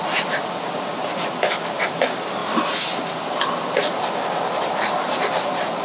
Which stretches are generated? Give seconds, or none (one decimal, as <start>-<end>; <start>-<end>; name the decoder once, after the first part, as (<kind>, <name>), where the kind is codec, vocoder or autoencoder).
none